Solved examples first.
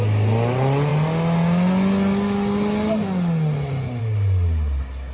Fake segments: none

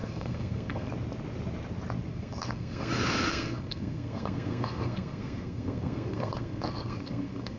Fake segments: 0.0-0.9; 2.1-2.9; 3.3-7.6

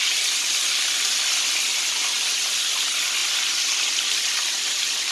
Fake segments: none

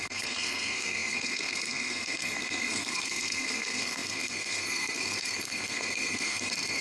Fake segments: 0.0-6.8

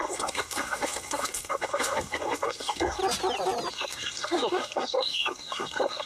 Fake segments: 0.0-3.0; 3.7-6.1

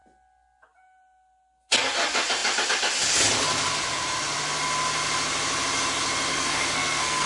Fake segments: 6.3-7.3

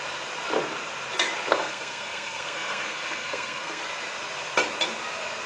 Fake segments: 1.5-3.8

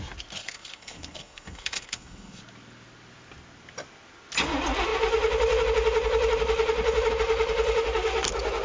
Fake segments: 0.4-2.4